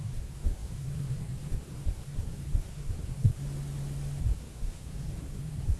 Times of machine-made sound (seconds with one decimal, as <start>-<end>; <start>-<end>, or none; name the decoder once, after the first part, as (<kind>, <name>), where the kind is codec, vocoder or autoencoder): 0.0-3.4 (codec, SNAC); 4.2-5.8